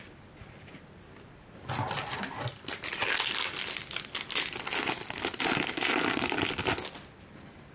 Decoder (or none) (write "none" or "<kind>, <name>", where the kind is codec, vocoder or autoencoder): none